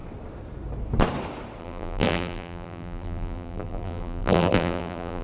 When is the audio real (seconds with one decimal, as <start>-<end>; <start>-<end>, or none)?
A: 0.0-1.6